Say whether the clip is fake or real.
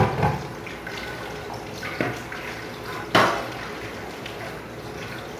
real